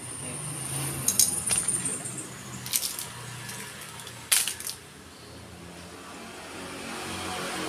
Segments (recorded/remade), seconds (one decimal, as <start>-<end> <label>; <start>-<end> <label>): 0.0-7.7 recorded